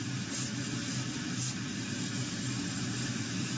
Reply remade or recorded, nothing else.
recorded